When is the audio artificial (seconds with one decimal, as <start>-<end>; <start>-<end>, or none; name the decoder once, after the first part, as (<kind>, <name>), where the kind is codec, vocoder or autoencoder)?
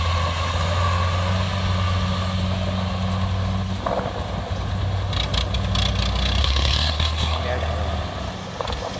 6.4-7.4 (codec, SNAC)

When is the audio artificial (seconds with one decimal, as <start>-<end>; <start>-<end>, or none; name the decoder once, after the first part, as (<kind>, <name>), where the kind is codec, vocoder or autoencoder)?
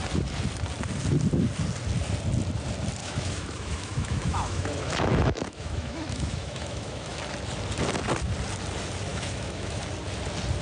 3.0-7.2 (autoencoder, DAC-VAE); 9.1-9.8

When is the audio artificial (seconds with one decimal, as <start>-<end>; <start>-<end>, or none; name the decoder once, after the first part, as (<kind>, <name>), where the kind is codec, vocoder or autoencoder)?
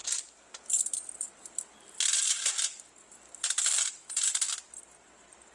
0.0-5.5 (vocoder, BigVGAN v2)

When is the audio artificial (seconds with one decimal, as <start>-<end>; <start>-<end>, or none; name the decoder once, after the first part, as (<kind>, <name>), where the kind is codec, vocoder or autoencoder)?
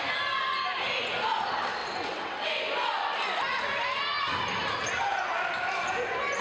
1.8-2.6 (vocoder, WaveNeXt)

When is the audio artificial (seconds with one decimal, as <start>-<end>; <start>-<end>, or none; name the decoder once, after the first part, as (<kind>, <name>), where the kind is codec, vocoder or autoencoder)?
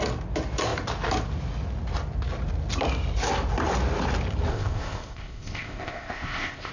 4.5-6.7 (codec, ZipCodec)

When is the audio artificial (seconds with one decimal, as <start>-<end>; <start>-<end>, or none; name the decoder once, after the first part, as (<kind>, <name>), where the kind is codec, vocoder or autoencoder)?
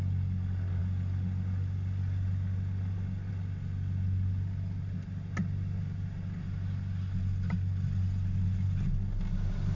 none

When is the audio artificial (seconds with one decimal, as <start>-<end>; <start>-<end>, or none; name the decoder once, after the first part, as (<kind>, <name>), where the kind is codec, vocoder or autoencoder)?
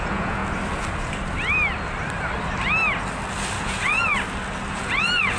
0.0-0.4 (vocoder, Vocos); 3.6-4.1; 4.7-5.4